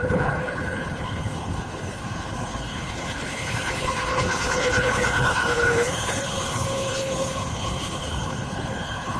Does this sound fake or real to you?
fake